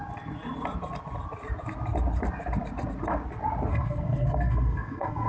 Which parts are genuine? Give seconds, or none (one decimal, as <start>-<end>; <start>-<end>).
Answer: 0.0-3.7